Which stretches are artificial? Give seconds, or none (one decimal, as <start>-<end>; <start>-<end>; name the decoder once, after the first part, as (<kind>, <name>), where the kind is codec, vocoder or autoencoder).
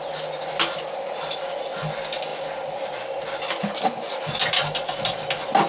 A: none